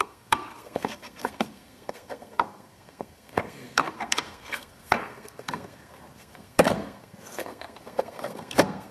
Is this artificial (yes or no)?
yes